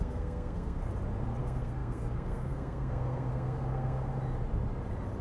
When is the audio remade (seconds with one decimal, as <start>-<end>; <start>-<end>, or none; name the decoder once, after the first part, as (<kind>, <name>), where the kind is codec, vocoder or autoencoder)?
0.0-0.8 (codec, SNAC); 1.4-4.1